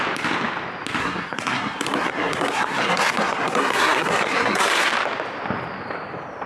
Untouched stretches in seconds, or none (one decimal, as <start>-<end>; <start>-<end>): 0.0-1.0; 4.9-6.5